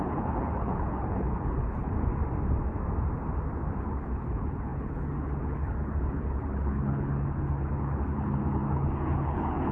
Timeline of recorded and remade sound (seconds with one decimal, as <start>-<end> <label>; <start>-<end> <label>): 0.0-2.1 remade; 2.1-3.8 recorded; 3.8-9.7 remade